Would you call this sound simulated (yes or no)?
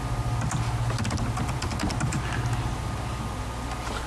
no